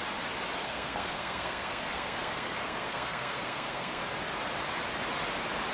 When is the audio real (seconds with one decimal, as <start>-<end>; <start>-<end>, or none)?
0.0-0.6; 4.0-5.7